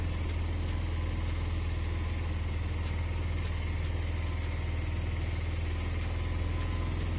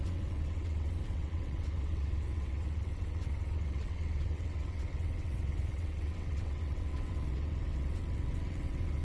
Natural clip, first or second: first